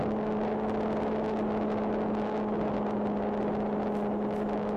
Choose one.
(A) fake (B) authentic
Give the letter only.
B